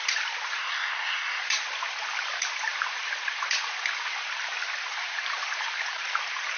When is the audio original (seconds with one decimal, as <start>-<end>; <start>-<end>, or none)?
0.0-0.6; 1.4-6.6